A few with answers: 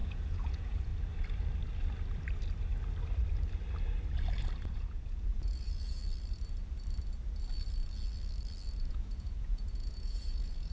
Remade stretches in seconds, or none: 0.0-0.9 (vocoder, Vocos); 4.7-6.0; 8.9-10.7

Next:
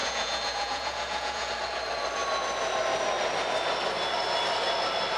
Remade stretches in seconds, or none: 0.0-1.5 (vocoder, Vocos)